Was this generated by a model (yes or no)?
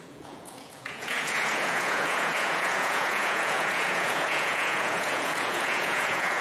yes